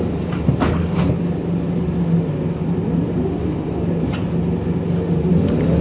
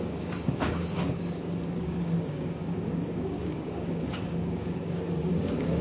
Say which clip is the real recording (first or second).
first